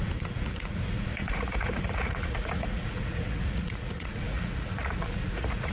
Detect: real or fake fake